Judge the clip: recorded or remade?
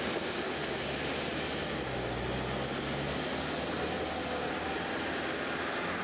recorded